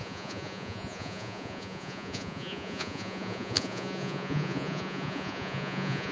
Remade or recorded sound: remade